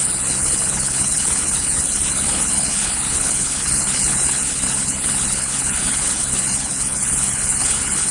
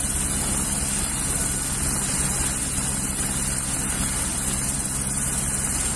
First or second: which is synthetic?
first